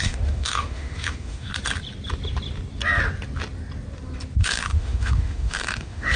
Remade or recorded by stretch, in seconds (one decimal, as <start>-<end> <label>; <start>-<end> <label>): 0.0-1.5 remade; 1.5-4.4 recorded; 4.4-6.2 remade